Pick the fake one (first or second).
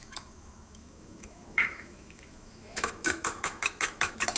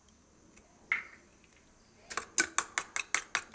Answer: first